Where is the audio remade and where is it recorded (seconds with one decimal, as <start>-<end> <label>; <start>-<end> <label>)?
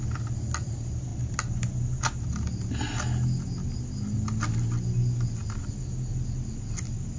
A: 0.0-7.2 recorded